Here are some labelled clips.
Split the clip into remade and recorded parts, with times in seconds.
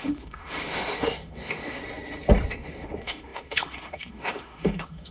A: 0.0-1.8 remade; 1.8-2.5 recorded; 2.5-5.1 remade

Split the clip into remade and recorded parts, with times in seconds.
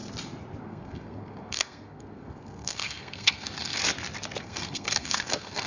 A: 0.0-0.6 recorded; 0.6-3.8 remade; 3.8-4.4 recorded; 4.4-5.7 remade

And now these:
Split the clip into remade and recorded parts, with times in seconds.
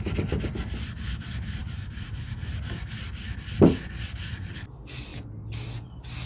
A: 0.0-6.3 recorded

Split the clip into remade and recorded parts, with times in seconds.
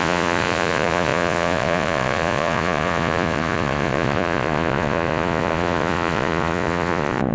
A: 0.0-7.3 remade